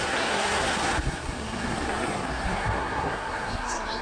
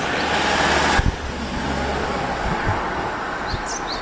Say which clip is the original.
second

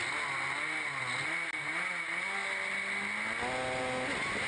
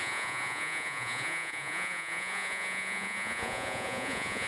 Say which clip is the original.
first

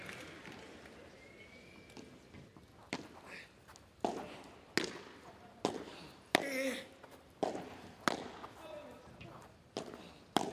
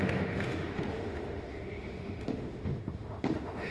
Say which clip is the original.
first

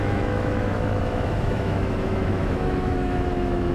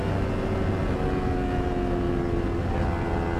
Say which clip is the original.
second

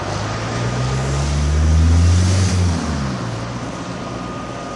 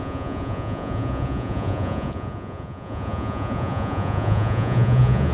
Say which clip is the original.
first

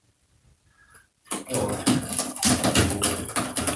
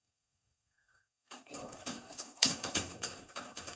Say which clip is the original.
first